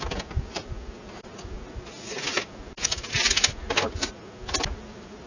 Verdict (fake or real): real